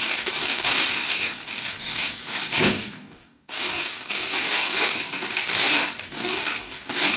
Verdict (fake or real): fake